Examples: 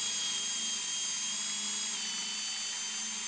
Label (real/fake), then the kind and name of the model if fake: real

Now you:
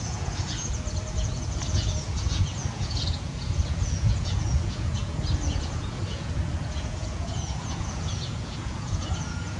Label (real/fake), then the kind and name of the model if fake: fake, vocoder, Vocos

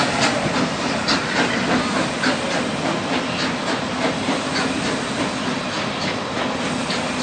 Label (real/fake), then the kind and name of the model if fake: real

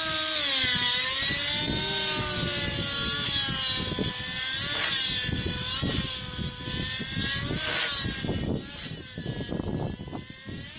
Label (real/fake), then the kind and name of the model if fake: real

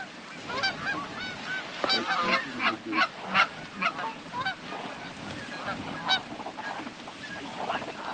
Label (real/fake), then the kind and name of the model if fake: real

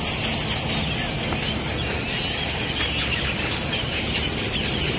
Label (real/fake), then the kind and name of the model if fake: real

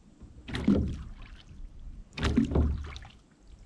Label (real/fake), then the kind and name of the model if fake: real